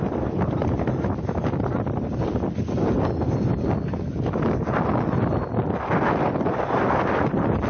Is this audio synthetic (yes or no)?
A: no